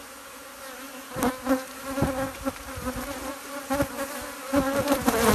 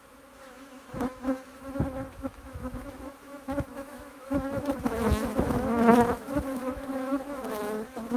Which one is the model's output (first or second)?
second